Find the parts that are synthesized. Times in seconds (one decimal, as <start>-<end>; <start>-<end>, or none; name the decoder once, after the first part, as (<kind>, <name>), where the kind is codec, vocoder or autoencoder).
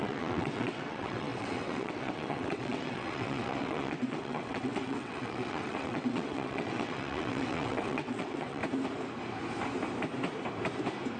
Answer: 0.0-8.6 (vocoder, WaveNeXt)